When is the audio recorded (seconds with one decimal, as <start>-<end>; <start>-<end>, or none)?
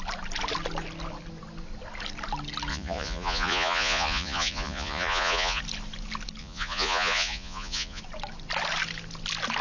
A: 0.0-2.7; 5.6-6.4; 8.0-9.6